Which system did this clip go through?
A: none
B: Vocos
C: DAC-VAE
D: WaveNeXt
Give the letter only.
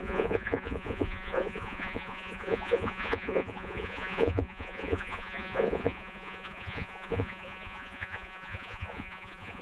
B